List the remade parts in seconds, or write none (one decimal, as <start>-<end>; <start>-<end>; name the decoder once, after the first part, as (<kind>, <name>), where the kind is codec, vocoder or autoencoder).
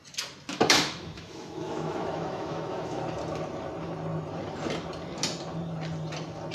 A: 0.5-3.0 (autoencoder, DAC-VAE)